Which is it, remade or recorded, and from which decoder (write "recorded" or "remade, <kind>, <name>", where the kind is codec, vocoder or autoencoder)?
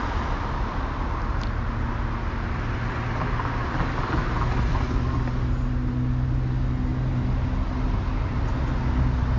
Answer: recorded